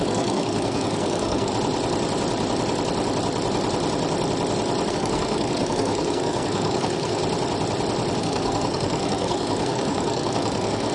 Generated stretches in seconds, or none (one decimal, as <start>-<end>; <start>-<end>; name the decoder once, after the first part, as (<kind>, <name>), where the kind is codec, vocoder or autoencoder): 0.0-1.5 (codec, SNAC); 4.9-7.2; 8.2-10.9